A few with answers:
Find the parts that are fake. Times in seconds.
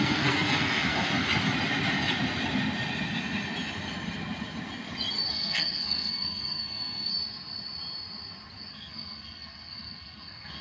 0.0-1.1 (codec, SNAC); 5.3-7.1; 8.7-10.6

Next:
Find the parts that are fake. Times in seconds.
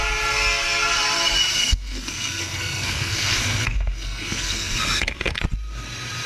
1.6-5.4 (codec, SNAC)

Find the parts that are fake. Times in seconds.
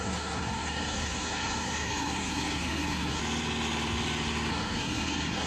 0.0-3.2 (codec, SNAC); 4.5-5.5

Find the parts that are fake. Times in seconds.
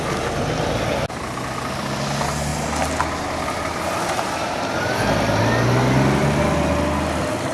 none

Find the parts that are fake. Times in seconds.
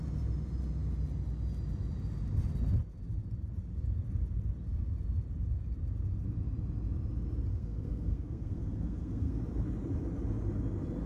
7.5-9.4 (codec, SNAC)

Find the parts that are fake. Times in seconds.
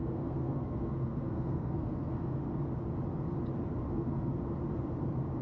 0.0-2.4 (codec, SNAC); 3.9-4.3